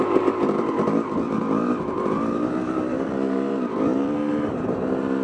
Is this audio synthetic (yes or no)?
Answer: yes